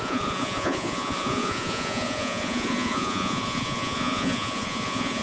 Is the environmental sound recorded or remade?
remade